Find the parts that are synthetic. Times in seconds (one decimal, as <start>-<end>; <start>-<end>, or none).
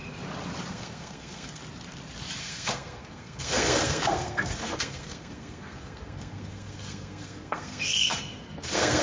0.7-1.6; 2.4-9.0